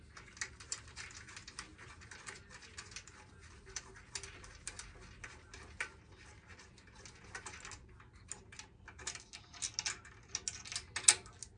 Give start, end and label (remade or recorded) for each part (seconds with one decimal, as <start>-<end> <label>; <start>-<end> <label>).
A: 0.0-11.6 recorded